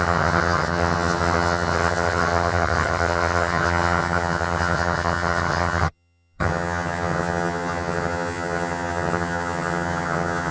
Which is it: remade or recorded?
remade